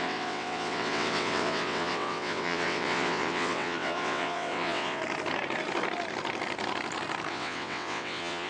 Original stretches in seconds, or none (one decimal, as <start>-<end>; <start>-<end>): 5.0-7.3